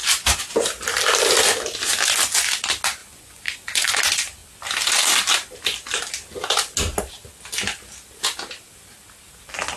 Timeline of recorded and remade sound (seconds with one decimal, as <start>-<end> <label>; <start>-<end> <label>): 0.0-3.0 recorded; 3.0-3.9 remade; 3.9-9.8 recorded